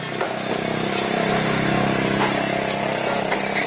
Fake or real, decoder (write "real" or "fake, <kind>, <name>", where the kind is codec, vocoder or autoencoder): real